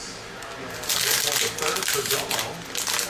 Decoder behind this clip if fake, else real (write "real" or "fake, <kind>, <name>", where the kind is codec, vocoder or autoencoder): real